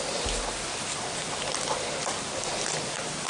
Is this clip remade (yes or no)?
no